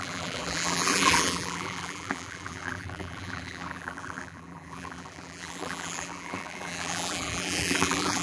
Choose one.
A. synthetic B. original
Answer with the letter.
A